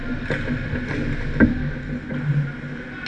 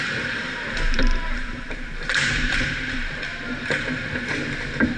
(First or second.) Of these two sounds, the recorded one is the first